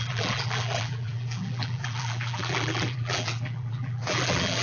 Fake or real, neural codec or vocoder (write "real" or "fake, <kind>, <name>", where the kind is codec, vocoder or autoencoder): fake, vocoder, BigVGAN v2